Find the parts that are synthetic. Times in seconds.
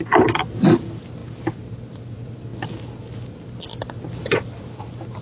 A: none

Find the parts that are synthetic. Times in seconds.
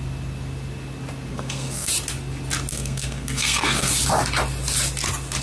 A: 1.3-1.9 (codec, SNAC); 2.7-3.9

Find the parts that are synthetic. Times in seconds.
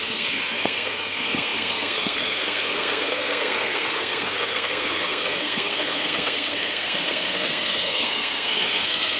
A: 0.0-9.2 (codec, SNAC)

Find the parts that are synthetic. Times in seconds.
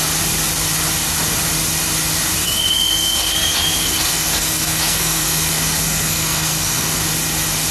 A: 2.4-7.0 (codec, SNAC)